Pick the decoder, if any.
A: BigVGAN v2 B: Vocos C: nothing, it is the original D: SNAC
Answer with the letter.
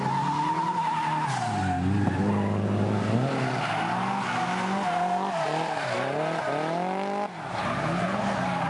C